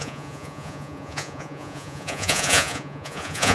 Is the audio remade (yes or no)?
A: yes